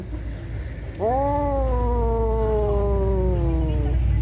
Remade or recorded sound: recorded